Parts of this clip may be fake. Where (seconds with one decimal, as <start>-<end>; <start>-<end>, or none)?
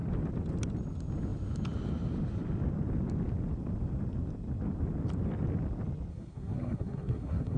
6.1-7.6